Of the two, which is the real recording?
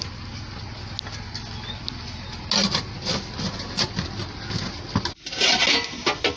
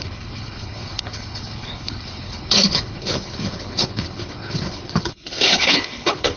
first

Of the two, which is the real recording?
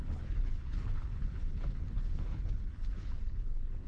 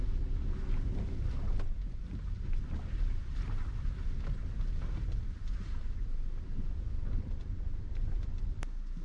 second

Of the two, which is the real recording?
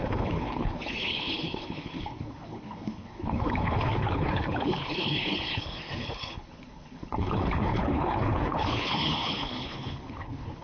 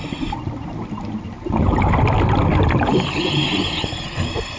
second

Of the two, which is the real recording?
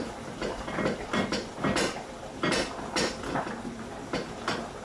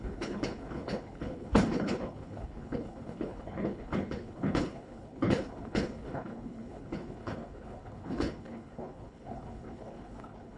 first